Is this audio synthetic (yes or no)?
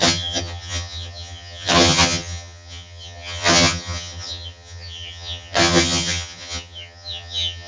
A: yes